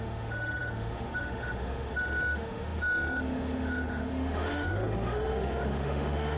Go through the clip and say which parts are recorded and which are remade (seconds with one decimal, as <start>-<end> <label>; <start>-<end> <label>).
0.0-6.4 remade